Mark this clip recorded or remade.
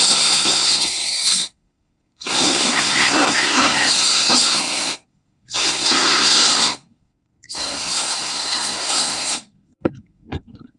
remade